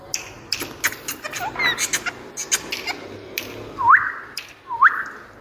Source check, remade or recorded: recorded